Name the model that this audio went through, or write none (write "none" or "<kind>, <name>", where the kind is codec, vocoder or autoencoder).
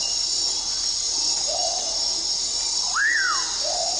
none